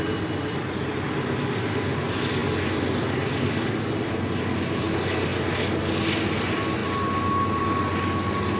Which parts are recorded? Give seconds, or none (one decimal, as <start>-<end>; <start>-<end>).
0.0-8.6